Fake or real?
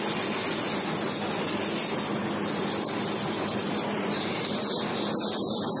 real